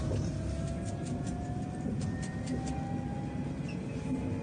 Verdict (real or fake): real